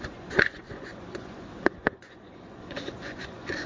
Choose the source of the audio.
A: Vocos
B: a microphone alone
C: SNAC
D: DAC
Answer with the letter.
A